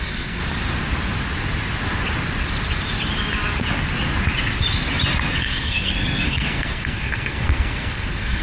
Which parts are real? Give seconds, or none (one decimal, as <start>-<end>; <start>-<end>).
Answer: 0.4-5.4